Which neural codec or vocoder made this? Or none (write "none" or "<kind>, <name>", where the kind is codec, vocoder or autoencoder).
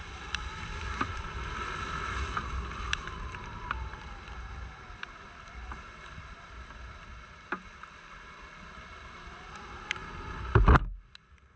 none